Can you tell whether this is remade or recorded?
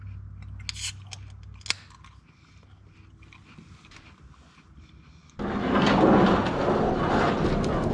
recorded